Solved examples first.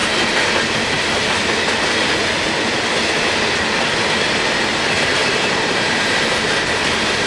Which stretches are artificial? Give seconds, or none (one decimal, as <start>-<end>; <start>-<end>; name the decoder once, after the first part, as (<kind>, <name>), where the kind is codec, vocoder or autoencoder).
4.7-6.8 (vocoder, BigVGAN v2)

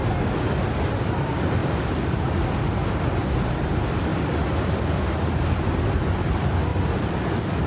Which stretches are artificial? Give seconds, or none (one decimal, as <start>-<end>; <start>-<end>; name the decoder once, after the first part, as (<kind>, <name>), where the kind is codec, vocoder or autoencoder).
1.6-3.5 (vocoder, BigVGAN v2)

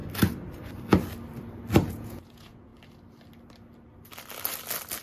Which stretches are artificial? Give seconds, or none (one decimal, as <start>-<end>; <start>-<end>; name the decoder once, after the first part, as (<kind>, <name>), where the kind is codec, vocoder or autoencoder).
1.9-2.7 (vocoder, Vocos)

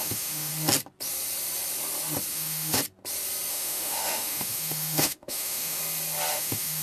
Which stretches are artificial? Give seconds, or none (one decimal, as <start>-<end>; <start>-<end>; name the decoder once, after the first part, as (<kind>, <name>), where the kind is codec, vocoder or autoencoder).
0.0-0.5 (autoencoder, DAC-VAE); 2.3-2.8; 3.5-5.8; 6.3-6.8

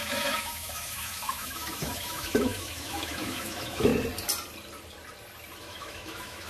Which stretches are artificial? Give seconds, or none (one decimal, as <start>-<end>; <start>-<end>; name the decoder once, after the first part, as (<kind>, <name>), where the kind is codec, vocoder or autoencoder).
0.0-3.9 (autoencoder, DAC-VAE); 5.6-6.5